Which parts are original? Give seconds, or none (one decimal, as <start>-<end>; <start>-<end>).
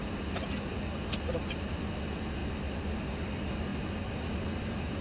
0.0-5.0